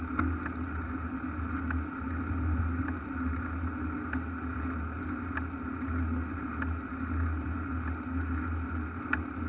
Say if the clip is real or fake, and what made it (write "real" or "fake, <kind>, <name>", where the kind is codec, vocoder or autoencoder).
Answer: real